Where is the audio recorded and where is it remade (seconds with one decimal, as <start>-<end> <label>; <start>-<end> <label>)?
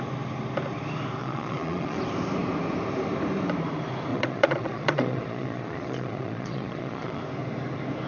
0.0-1.2 recorded; 1.2-2.0 remade; 2.0-4.1 recorded; 4.1-7.2 remade; 7.2-8.1 recorded